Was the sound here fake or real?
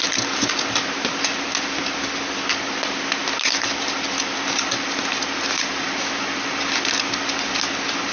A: real